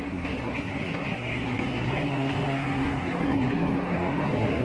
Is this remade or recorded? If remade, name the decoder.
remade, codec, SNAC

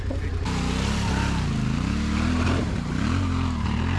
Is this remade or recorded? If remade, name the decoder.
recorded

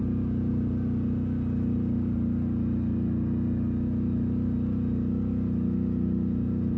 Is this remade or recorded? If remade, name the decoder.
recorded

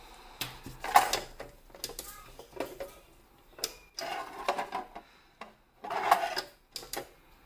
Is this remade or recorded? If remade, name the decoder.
recorded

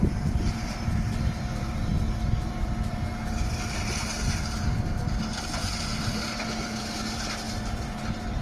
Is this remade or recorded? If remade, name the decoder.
remade, vocoder, BigVGAN v2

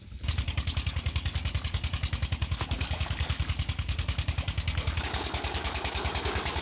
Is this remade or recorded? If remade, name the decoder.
remade, codec, DAC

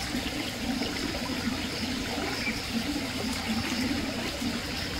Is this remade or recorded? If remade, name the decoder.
recorded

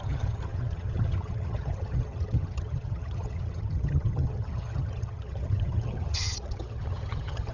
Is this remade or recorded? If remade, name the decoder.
remade, vocoder, HiFi-GAN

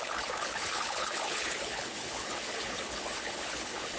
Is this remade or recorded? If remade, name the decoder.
remade, codec, HILCodec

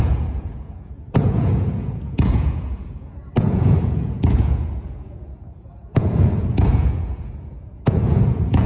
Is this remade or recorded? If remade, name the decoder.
remade, vocoder, Vocos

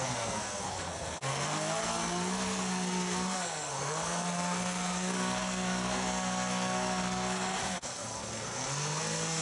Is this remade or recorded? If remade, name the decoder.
remade, codec, SNAC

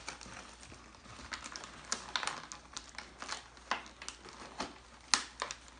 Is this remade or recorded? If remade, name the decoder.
recorded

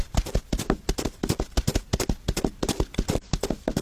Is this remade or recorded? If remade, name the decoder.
recorded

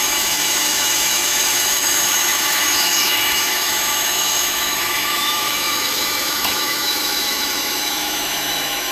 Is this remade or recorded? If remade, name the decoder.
remade, autoencoder, DAC-VAE